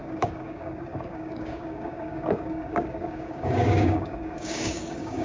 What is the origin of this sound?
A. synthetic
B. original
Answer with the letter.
A